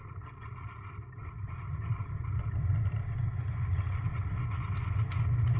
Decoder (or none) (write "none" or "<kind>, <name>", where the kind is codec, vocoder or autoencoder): none